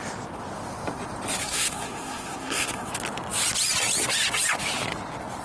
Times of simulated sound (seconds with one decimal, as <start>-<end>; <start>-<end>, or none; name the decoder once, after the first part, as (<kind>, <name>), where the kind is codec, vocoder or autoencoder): 1.4-2.9 (codec, SNAC)